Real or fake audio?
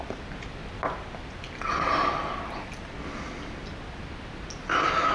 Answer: real